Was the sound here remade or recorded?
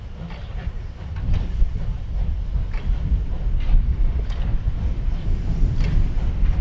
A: recorded